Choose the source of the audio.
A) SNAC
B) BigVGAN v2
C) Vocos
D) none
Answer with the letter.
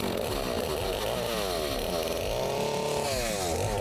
D